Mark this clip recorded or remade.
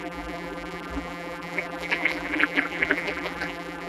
remade